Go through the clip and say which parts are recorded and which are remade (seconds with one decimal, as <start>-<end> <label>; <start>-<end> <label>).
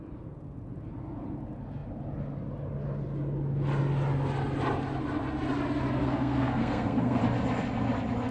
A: 0.0-6.0 recorded; 6.0-7.2 remade; 7.2-8.3 recorded